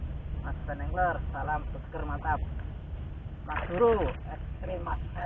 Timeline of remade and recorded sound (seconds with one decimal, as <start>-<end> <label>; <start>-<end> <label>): 0.0-4.5 recorded; 4.5-5.3 remade